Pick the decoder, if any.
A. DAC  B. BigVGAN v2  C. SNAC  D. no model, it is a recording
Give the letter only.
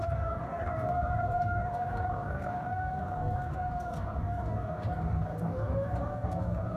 A